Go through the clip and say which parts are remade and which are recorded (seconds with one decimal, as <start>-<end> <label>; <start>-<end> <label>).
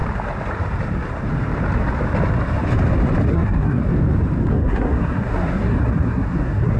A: 0.0-3.3 recorded; 3.3-3.9 remade; 3.9-4.5 recorded; 4.5-6.8 remade